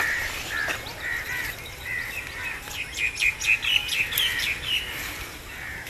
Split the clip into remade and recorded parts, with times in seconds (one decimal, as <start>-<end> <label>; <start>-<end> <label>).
0.0-0.9 recorded; 0.9-1.9 remade; 1.9-5.9 recorded